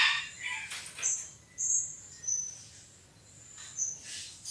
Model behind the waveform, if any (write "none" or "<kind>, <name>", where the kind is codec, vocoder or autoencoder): none